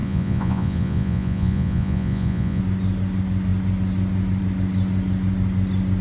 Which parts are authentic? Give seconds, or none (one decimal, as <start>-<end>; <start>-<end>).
2.6-6.0